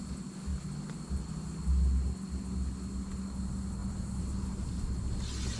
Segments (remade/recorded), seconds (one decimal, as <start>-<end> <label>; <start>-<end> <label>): 0.0-3.8 recorded; 3.8-4.7 remade; 4.7-5.6 recorded